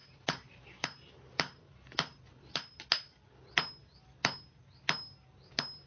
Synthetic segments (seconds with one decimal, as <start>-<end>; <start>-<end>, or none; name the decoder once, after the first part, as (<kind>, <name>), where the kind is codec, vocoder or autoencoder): 0.0-2.2 (vocoder, BigVGAN v2)